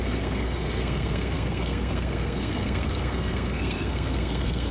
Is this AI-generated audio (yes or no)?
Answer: yes